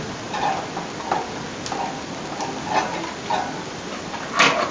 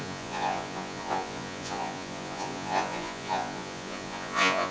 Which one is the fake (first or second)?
second